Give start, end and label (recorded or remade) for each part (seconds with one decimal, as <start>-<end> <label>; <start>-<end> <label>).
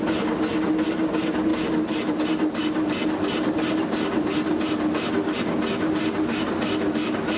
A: 0.0-7.4 recorded